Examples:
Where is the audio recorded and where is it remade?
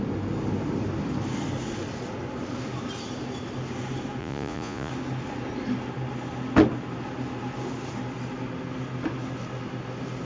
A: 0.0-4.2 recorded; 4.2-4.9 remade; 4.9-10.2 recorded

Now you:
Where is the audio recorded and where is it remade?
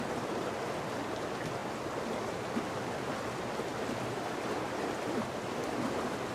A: 0.0-3.7 recorded; 3.7-6.3 remade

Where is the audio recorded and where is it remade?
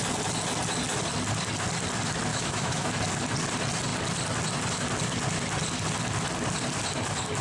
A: 0.0-2.3 recorded; 2.3-2.9 remade; 2.9-7.4 recorded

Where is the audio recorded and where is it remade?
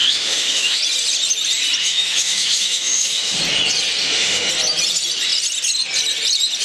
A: 0.0-0.8 remade; 0.8-1.8 recorded; 1.8-3.4 remade; 3.4-4.0 recorded; 4.0-4.5 remade; 4.5-6.6 recorded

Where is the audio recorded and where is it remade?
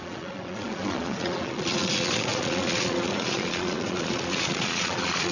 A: 0.0-5.3 remade